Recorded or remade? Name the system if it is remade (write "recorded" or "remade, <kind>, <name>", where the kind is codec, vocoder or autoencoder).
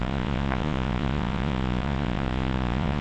remade, vocoder, Vocos